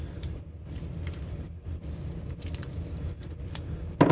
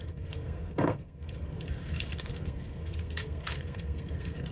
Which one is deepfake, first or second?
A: second